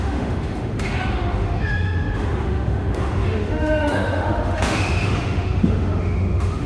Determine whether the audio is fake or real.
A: fake